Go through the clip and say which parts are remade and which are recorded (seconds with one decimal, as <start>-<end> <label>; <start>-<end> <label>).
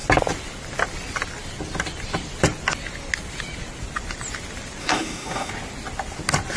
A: 0.0-4.8 recorded; 4.8-5.5 remade; 5.5-6.6 recorded